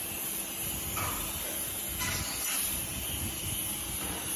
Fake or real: real